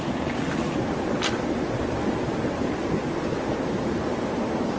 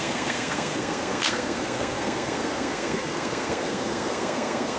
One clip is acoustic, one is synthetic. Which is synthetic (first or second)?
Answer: second